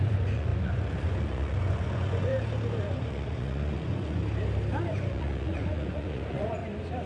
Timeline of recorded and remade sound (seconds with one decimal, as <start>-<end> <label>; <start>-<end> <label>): 0.0-2.3 remade; 2.3-2.8 recorded; 2.8-4.2 remade; 4.2-4.9 recorded; 4.9-6.6 remade; 6.6-7.1 recorded